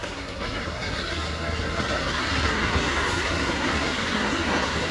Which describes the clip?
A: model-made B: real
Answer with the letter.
A